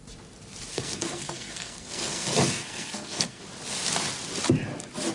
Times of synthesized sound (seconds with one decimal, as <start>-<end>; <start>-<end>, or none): 0.7-3.4